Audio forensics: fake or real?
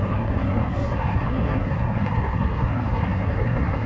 fake